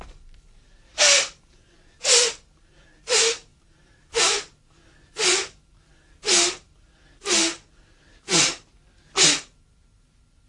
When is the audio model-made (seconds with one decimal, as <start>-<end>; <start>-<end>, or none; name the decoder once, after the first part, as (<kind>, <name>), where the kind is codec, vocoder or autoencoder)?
0.0-10.5 (vocoder, BigVGAN v2)